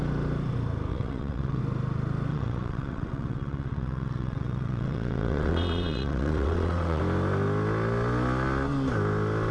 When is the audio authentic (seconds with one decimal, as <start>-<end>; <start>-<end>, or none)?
0.0-0.9; 1.6-2.3; 7.0-9.5